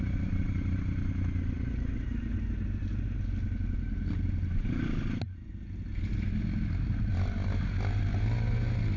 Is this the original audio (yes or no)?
yes